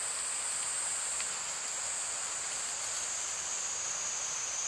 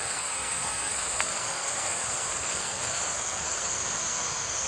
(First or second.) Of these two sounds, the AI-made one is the second